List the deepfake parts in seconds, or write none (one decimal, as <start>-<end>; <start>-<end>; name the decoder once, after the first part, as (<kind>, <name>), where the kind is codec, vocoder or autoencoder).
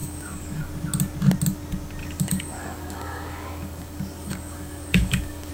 0.0-0.7 (codec, DAC); 2.0-5.5